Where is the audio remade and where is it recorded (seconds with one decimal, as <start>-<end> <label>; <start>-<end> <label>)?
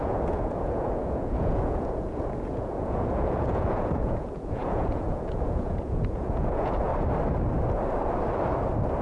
0.0-6.9 remade; 6.9-9.0 recorded